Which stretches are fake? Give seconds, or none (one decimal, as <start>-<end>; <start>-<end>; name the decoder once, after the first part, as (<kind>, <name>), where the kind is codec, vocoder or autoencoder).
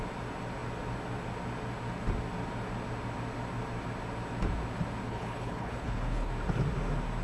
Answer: 5.1-6.3 (codec, HILCodec)